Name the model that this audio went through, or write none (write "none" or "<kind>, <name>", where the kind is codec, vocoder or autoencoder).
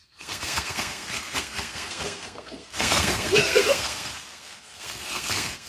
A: codec, SNAC